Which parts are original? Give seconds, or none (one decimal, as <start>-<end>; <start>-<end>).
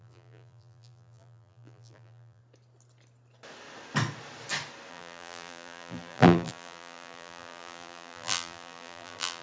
2.4-4.9